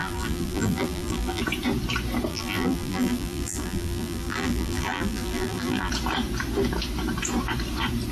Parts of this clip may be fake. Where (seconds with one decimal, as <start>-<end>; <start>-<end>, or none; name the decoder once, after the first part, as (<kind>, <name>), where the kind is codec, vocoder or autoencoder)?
0.0-1.4 (vocoder, BigVGAN v2); 2.3-5.9